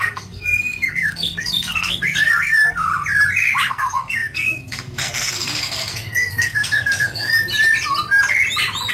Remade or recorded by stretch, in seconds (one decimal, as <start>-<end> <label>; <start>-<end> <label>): 0.0-2.9 remade; 2.9-3.7 recorded; 3.7-7.3 remade; 7.3-8.9 recorded